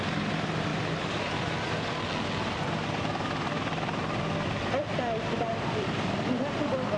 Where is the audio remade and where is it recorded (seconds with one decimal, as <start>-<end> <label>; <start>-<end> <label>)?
0.0-5.5 recorded; 5.5-6.1 remade; 6.1-7.0 recorded